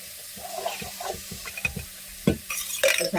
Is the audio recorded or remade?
recorded